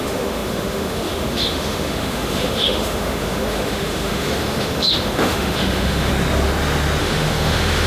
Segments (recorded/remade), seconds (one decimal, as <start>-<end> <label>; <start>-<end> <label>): 0.0-6.1 remade; 6.1-7.0 recorded; 7.0-7.9 remade

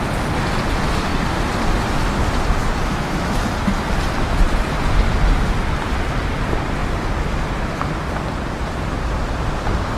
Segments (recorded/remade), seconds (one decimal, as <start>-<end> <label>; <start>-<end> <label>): 0.0-2.6 recorded; 2.6-3.4 remade; 3.4-10.0 recorded

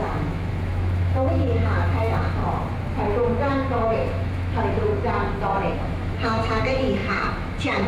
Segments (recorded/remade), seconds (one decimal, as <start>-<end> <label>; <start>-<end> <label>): 0.0-2.4 remade; 2.4-3.5 recorded; 3.5-4.9 remade; 4.9-5.7 recorded; 5.7-7.9 remade

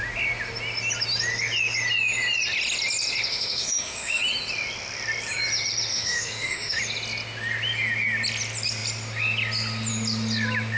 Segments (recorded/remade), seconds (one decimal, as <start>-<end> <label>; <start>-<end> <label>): 0.0-3.3 recorded; 3.3-4.2 remade; 4.2-5.9 recorded; 5.9-6.8 remade; 6.8-10.8 recorded